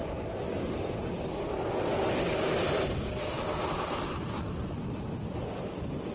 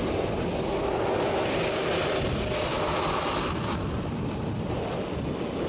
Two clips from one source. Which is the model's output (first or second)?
first